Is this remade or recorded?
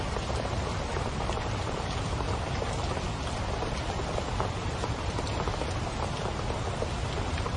remade